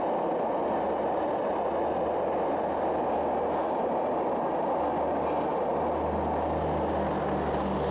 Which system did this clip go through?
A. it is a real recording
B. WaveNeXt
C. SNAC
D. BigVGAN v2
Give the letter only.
A